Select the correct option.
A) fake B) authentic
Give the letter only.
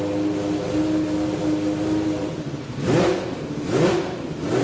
B